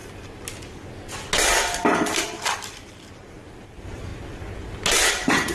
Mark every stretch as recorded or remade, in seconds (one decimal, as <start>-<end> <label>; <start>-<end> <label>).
0.0-1.9 recorded; 1.9-4.1 remade; 4.1-5.1 recorded; 5.1-5.5 remade